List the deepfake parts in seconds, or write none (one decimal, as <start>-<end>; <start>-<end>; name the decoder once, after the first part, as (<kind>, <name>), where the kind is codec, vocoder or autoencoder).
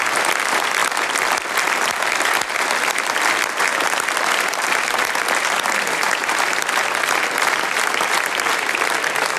none